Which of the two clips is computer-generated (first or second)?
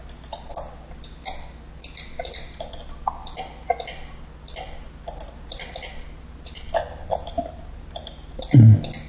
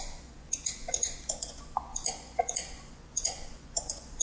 second